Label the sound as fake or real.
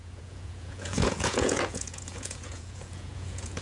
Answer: fake